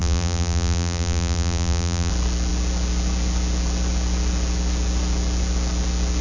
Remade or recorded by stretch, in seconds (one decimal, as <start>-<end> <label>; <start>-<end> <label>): 0.0-2.1 remade; 2.1-6.2 recorded